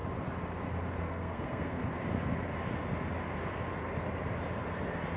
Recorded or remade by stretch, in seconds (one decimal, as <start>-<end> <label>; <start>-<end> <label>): 0.0-1.0 recorded; 1.0-1.8 remade; 1.8-5.2 recorded